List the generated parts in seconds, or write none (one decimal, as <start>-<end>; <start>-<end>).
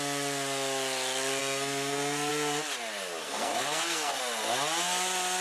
1.4-2.3; 3.2-4.2